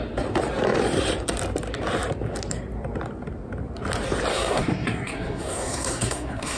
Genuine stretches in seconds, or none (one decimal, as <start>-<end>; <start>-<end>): 0.0-4.3